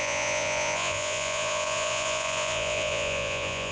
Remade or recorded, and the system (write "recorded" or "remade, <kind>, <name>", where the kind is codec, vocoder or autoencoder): remade, vocoder, Vocos